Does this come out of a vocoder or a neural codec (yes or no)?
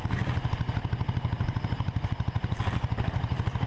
no